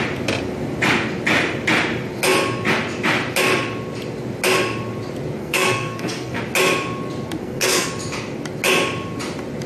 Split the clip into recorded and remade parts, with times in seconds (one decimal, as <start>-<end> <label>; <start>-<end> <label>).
0.0-5.4 recorded; 5.4-6.4 remade; 6.4-7.4 recorded; 7.4-7.9 remade; 7.9-9.7 recorded